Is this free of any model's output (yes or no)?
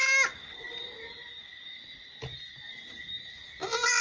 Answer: yes